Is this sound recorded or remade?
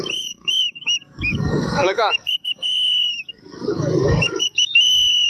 remade